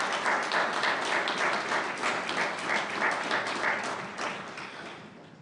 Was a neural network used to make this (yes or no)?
no